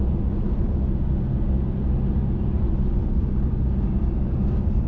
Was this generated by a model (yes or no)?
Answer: no